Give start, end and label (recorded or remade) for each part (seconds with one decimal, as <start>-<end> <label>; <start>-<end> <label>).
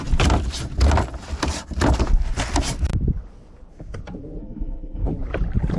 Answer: 0.0-4.4 recorded; 4.4-5.1 remade; 5.1-5.8 recorded